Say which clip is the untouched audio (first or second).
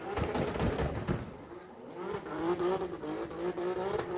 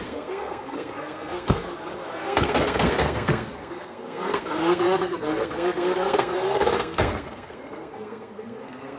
first